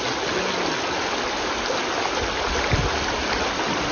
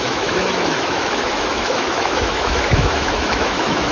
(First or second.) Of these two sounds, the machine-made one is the second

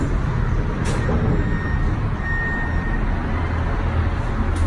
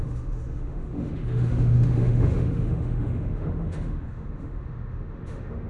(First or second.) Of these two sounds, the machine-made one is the second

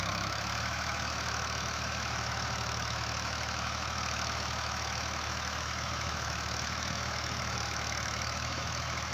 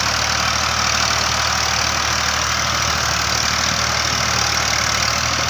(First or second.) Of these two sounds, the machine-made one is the first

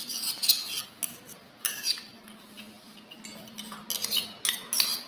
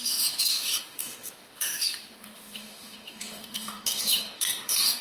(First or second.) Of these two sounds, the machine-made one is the second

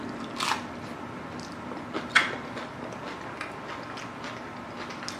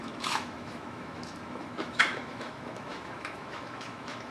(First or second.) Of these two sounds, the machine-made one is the second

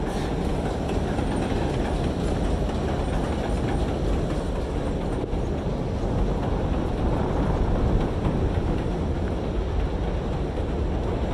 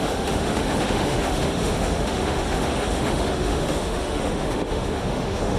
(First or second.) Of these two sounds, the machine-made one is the second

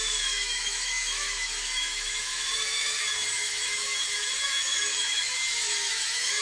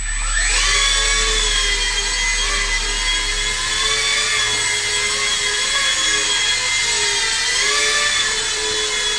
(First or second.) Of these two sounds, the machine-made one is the first